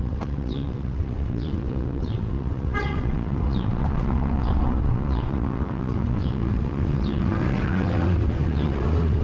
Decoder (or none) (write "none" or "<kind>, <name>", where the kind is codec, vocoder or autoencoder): vocoder, WaveNeXt